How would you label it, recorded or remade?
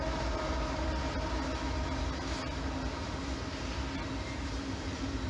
recorded